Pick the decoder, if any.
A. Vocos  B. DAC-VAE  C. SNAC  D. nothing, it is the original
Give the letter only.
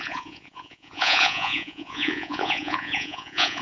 A